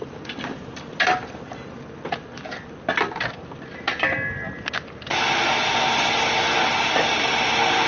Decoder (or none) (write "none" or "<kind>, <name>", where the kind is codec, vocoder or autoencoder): none